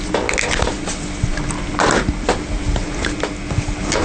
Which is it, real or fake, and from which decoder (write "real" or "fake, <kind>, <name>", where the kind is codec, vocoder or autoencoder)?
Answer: real